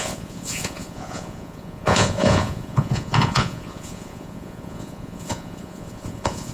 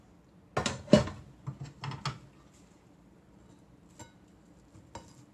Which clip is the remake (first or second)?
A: first